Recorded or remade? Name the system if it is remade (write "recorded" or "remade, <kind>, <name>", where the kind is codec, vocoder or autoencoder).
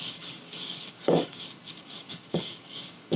remade, codec, DAC